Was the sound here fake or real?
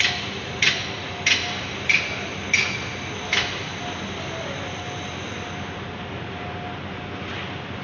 real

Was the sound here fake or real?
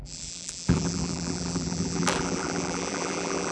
fake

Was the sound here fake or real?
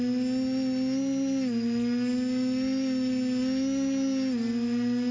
real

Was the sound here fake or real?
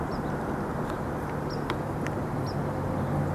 real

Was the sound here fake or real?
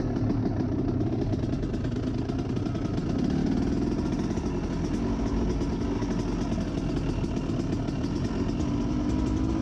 real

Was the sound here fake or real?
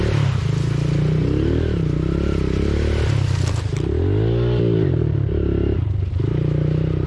real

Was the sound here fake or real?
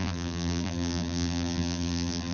fake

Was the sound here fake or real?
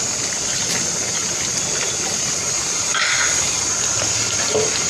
real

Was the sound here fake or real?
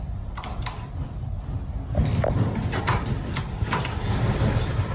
fake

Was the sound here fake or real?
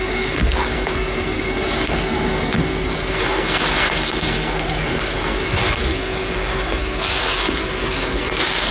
fake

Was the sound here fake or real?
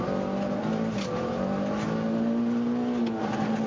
real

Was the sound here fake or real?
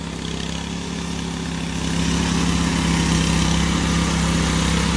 real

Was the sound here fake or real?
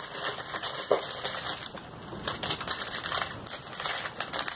real